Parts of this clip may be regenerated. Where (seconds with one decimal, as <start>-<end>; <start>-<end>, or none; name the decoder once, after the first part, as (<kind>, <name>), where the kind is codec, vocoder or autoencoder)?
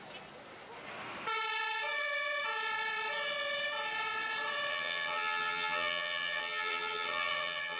4.7-7.8 (vocoder, HiFi-GAN)